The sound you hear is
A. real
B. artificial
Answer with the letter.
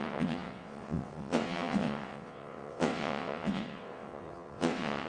B